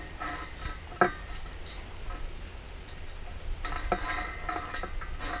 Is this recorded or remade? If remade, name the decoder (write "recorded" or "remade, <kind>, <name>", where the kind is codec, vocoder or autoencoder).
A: recorded